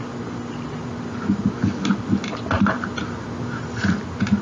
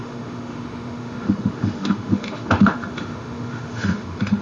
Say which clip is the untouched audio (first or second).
first